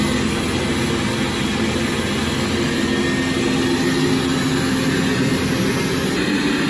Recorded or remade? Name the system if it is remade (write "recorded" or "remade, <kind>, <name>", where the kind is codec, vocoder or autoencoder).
recorded